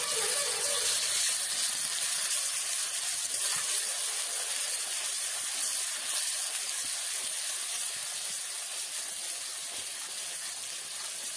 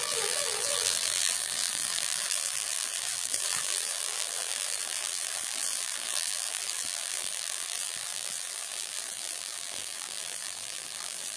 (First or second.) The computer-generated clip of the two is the second